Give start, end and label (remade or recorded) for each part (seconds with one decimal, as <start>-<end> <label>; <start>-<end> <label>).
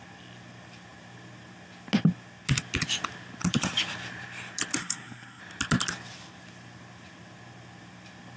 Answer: 0.0-4.8 recorded; 4.8-5.4 remade; 5.4-8.4 recorded